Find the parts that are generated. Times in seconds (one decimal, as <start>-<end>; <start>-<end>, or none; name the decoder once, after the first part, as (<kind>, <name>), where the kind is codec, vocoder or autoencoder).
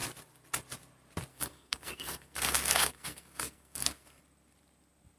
1.3-4.2 (codec, SNAC)